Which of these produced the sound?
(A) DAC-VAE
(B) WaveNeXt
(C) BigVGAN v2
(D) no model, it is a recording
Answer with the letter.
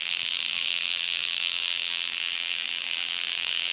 C